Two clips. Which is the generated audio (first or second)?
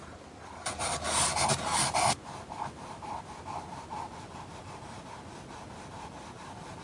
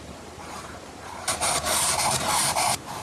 second